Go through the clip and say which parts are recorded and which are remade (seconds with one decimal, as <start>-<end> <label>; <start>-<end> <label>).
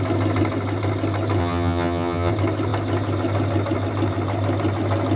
0.0-1.4 recorded; 1.4-2.3 remade; 2.3-5.2 recorded